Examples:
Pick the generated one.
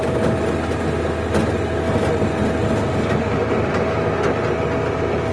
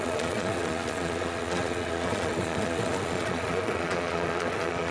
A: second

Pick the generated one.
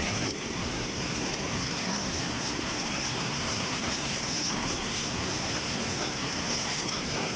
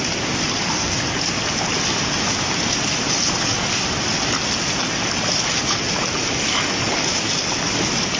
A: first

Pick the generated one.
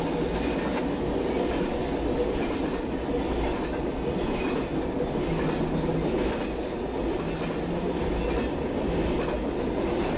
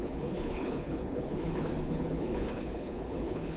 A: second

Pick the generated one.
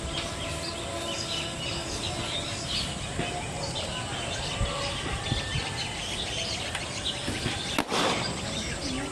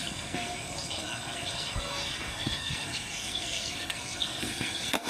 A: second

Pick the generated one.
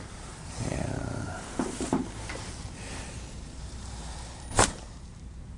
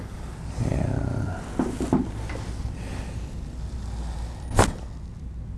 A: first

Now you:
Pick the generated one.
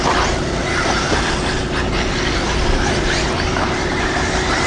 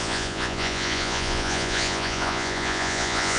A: second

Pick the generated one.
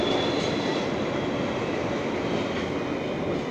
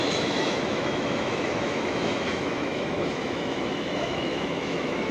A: second